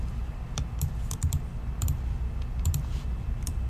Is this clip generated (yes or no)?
no